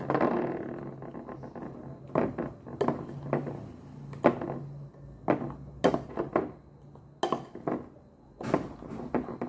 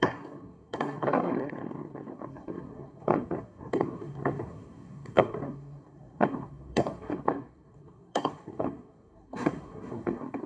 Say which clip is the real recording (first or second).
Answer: first